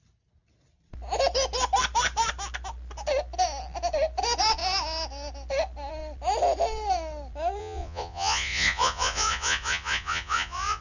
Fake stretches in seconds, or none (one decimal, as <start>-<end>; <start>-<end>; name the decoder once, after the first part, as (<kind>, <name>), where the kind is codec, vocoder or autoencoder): 7.6-10.8 (vocoder, Vocos)